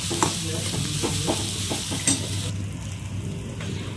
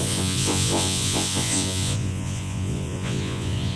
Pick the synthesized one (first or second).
second